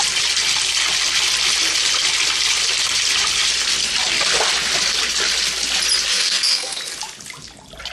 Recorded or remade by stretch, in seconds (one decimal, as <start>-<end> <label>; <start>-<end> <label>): 0.0-6.1 recorded; 6.1-6.8 remade; 6.8-7.9 recorded